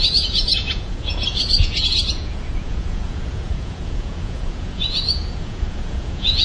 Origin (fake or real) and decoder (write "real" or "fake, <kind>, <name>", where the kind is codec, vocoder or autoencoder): fake, vocoder, Vocos